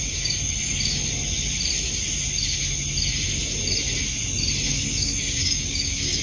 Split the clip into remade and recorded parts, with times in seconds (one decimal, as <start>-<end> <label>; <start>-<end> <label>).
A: 0.0-1.0 remade; 1.0-4.7 recorded; 4.7-6.2 remade